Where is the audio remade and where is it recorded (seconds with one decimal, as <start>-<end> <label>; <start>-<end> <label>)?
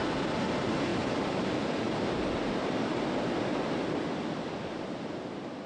0.0-0.9 recorded; 0.9-2.3 remade; 2.3-5.7 recorded